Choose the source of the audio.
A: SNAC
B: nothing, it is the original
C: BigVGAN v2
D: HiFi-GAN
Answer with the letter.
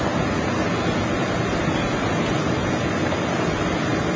B